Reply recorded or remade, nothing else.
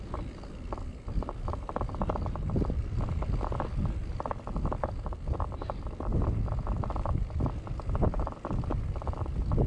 recorded